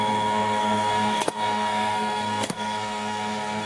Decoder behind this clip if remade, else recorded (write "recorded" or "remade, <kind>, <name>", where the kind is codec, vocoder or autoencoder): remade, codec, SNAC